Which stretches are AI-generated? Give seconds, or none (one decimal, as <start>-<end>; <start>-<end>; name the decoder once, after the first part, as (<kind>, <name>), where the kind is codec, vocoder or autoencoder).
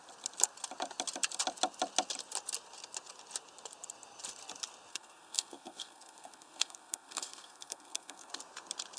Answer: 4.9-8.3 (codec, SNAC)